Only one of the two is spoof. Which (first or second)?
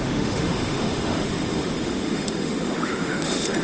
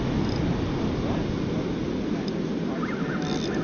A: first